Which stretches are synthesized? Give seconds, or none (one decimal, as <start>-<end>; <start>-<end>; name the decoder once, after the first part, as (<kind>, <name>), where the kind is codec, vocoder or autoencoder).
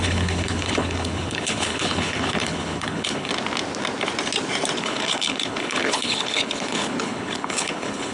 0.0-3.3 (codec, HILCodec); 4.8-8.1